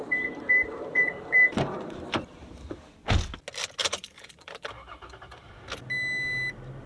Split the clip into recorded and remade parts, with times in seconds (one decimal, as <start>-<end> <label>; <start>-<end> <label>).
0.0-2.9 remade; 2.9-3.8 recorded; 3.8-5.5 remade; 5.5-6.9 recorded